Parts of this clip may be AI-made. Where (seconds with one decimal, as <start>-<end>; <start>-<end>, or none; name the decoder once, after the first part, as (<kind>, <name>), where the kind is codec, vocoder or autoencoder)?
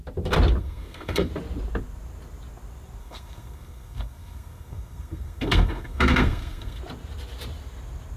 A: 0.6-1.3 (codec, SNAC); 3.0-6.8